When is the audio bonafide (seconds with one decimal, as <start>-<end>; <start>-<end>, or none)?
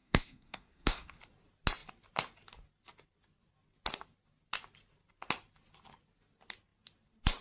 1.2-7.4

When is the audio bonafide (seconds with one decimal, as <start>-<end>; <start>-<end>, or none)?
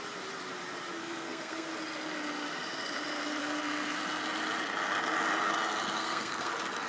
0.0-1.0; 1.7-3.4; 4.0-6.0; 6.5-6.9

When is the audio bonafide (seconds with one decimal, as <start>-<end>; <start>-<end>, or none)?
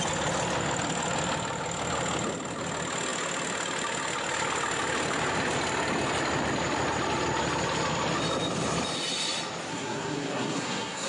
0.0-9.7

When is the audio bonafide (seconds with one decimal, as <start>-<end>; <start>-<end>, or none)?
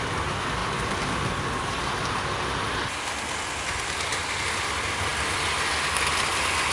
0.0-6.7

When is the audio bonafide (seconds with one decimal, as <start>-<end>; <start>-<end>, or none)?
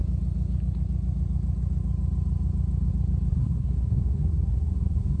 0.0-3.3